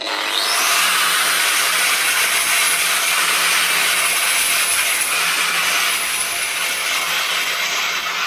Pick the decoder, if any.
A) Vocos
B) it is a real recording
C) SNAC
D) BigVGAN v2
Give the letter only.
B